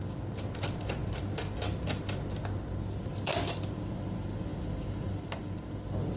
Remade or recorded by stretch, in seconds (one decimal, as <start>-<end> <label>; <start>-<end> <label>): 0.0-4.5 recorded; 4.5-5.7 remade; 5.7-6.2 recorded

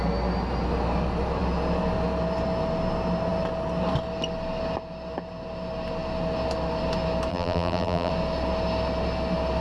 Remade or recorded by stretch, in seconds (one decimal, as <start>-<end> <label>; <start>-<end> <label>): 0.0-7.3 recorded; 7.3-8.1 remade; 8.1-9.6 recorded

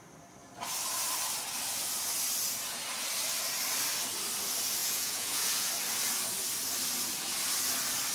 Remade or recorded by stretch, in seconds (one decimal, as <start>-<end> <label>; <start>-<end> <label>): 0.0-4.8 recorded; 4.8-5.7 remade; 5.7-8.1 recorded

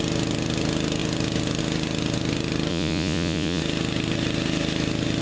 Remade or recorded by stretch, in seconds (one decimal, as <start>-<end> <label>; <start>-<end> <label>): 0.0-2.7 recorded; 2.7-3.6 remade; 3.6-5.2 recorded